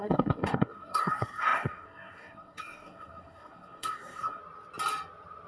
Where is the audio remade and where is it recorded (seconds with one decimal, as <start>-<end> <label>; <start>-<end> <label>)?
0.0-4.4 remade; 4.4-5.5 recorded